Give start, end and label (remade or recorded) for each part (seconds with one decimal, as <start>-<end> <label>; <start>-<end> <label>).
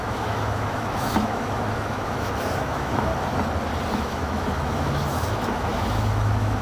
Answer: 0.0-3.1 remade; 3.1-3.9 recorded; 3.9-6.6 remade